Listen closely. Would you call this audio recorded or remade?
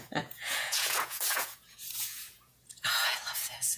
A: remade